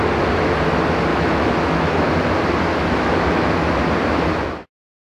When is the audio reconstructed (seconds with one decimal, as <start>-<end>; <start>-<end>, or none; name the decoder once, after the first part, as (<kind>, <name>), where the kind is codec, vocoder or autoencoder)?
1.1-2.1 (autoencoder, DAC-VAE); 2.7-3.8